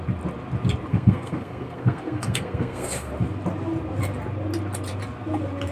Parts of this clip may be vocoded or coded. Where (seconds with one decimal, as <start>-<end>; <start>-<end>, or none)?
0.9-3.1